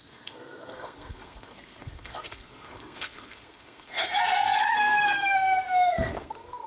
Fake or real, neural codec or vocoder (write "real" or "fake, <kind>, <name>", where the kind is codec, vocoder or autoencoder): fake, codec, SNAC